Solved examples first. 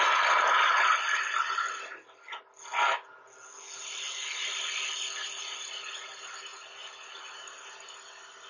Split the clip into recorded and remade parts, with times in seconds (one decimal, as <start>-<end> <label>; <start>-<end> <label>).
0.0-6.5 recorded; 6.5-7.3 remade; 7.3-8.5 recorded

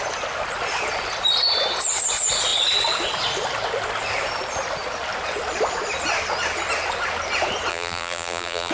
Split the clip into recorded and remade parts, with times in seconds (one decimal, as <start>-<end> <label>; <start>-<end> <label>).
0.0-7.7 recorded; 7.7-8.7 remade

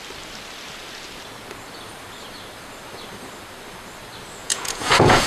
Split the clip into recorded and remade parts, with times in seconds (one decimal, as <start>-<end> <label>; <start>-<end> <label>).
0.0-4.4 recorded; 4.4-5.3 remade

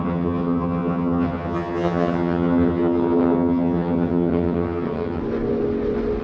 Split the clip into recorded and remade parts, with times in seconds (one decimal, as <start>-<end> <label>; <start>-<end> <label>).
0.0-5.2 remade; 5.2-6.2 recorded